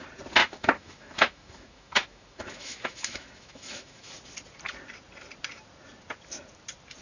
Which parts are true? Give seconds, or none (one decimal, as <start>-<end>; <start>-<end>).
0.0-0.4; 4.1-7.0

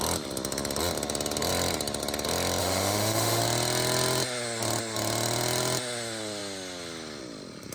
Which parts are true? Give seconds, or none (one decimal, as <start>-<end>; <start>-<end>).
0.0-2.6; 3.4-7.7

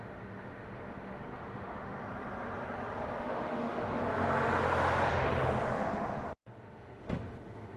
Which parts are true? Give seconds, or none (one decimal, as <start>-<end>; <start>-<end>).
2.0-3.2; 4.0-5.1

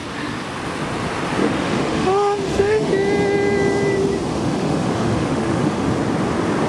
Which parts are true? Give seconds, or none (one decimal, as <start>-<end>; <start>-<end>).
0.0-1.4; 2.9-4.3; 5.9-6.7

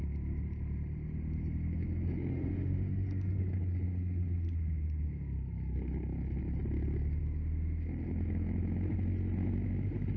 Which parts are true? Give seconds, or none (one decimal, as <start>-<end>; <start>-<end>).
0.0-2.3; 3.4-10.2

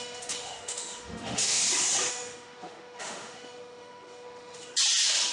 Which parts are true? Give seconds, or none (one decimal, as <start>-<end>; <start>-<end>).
1.6-2.1; 4.7-5.3

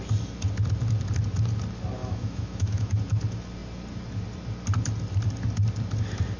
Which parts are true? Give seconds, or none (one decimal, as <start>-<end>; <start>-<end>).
0.0-2.0; 3.0-6.4

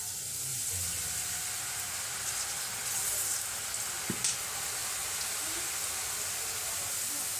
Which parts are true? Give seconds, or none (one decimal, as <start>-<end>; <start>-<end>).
0.0-7.4